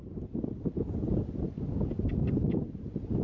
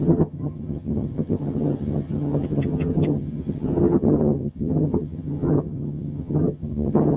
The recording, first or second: first